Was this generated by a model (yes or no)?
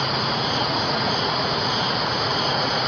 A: yes